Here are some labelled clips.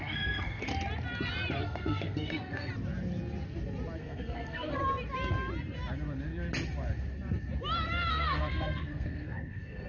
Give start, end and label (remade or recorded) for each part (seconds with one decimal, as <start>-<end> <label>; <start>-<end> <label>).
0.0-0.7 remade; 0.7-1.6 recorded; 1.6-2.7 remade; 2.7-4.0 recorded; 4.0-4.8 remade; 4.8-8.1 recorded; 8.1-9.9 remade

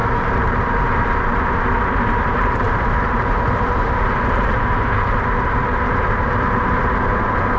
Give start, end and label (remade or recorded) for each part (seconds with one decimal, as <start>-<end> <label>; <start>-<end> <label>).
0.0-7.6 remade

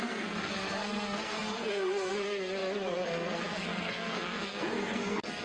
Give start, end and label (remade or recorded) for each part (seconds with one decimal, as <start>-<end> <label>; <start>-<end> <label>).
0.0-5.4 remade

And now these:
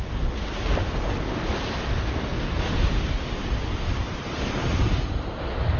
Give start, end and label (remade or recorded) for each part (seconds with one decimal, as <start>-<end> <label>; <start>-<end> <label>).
0.0-5.8 recorded

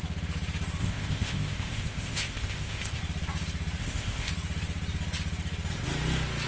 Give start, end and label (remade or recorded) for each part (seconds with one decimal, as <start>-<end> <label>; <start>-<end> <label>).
0.0-0.8 recorded; 0.8-3.0 remade; 3.0-3.8 recorded; 3.8-4.3 remade; 4.3-6.5 recorded

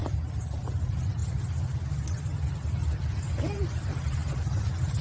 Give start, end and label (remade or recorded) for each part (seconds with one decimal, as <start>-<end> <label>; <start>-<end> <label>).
0.0-5.0 recorded

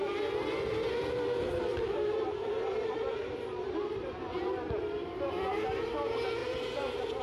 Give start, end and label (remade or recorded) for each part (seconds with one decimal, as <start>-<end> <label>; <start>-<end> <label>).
0.0-1.7 recorded; 1.7-4.1 remade; 4.1-6.4 recorded; 6.4-7.2 remade

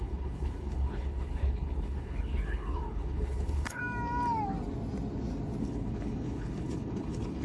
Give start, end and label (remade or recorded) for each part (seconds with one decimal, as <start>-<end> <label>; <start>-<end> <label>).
0.0-3.8 remade; 3.8-5.6 recorded; 5.6-7.4 remade